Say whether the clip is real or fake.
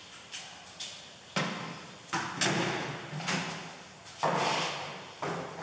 real